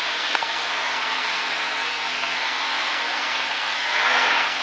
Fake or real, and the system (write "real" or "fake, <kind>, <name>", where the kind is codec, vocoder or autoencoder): fake, codec, SNAC